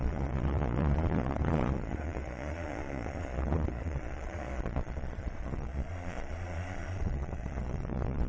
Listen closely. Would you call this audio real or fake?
fake